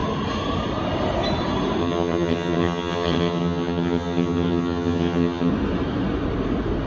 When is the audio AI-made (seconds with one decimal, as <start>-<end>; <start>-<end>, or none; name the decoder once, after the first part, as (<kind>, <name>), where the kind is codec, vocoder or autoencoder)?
1.8-5.5 (vocoder, HiFi-GAN)